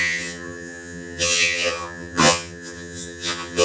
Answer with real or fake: fake